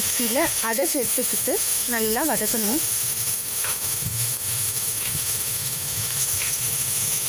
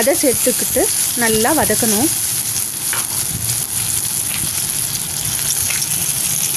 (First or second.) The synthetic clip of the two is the first